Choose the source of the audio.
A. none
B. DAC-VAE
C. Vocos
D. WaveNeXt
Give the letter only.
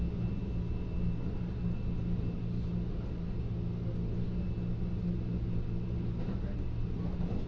A